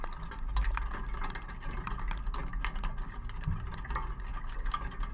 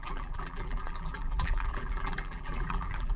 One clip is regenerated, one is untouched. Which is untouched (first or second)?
first